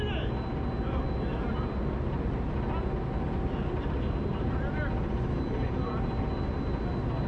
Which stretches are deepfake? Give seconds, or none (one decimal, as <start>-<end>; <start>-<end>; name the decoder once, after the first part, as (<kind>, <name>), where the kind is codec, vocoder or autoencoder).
4.3-6.2 (vocoder, BigVGAN v2)